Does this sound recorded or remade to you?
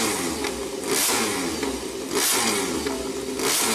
recorded